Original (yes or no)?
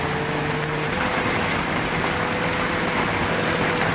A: yes